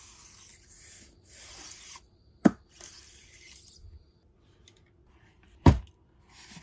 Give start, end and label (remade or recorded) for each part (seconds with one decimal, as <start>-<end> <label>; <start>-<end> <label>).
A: 0.0-0.5 recorded; 0.5-3.6 remade; 3.6-5.0 recorded; 5.0-5.9 remade; 5.9-6.6 recorded